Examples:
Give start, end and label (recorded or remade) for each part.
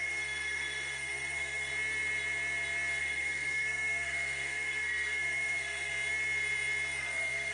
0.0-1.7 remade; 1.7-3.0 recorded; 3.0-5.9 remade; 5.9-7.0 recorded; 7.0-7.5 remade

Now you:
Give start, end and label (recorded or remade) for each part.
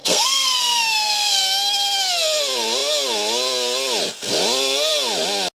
0.0-1.4 remade; 1.4-5.5 recorded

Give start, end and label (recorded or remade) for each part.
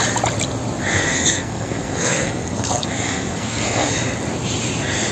0.0-0.8 recorded; 0.8-3.9 remade; 3.9-5.1 recorded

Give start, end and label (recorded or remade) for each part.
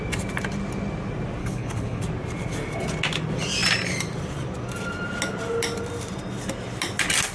0.0-1.4 recorded; 1.4-2.0 remade; 2.0-7.3 recorded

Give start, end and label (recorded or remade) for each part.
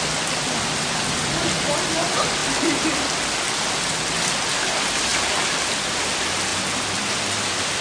0.0-2.4 recorded; 2.4-3.0 remade; 3.0-5.1 recorded; 5.1-5.9 remade; 5.9-7.8 recorded